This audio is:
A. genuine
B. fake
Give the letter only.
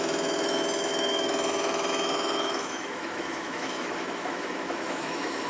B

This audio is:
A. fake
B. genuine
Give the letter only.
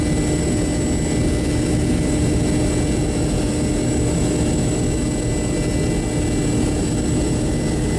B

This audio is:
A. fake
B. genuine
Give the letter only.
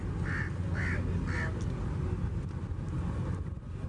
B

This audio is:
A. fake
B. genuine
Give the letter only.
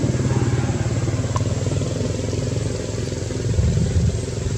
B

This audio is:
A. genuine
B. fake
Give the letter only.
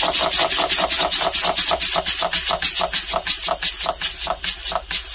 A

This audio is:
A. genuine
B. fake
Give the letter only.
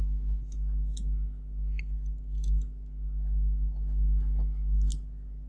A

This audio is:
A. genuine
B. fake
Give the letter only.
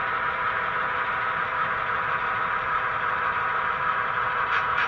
B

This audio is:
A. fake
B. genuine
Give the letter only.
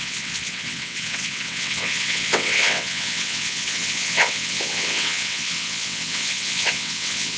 A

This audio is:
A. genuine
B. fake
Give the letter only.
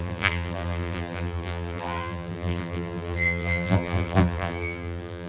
B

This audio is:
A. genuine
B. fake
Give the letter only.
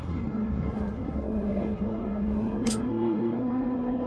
B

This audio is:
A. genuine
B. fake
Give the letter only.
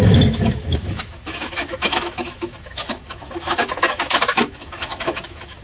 B